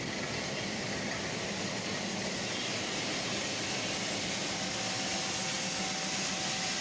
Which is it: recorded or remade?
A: recorded